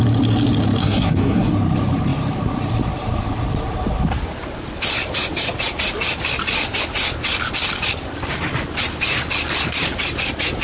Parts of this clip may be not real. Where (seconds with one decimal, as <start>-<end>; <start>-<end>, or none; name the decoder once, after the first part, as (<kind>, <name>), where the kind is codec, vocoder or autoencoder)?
0.8-1.5 (codec, SNAC)